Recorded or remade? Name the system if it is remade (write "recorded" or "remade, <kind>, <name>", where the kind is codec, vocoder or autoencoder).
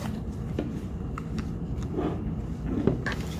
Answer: recorded